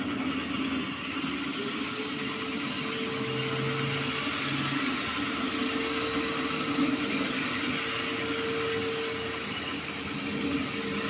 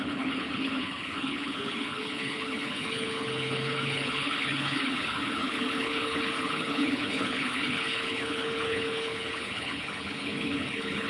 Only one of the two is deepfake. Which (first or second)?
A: second